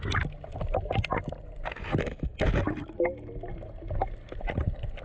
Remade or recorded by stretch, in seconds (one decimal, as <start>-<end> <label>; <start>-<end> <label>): 0.0-5.0 recorded